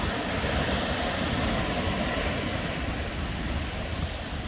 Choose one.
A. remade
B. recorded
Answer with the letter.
B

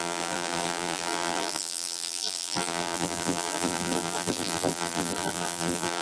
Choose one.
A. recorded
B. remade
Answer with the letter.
B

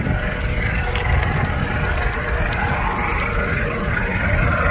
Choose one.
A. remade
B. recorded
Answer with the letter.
B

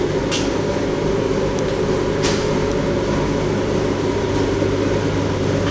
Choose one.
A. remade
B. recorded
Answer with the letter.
B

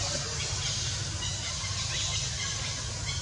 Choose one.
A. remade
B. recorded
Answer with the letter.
B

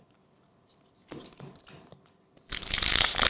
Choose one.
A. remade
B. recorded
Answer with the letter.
B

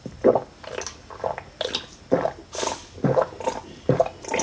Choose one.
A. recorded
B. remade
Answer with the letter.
A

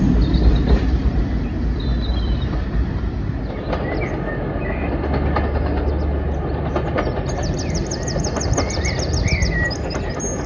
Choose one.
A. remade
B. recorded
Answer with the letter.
B